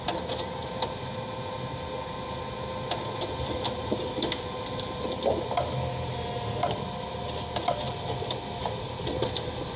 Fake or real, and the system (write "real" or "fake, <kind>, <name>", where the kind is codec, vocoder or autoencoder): real